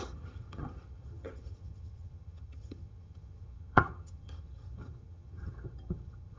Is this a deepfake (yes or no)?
yes